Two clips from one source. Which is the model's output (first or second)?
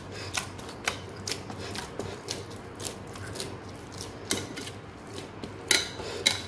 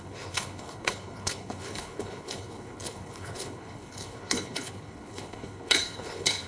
second